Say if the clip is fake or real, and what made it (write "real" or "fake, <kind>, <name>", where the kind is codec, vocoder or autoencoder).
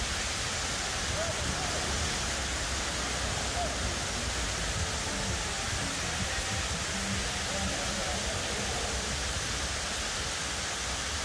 real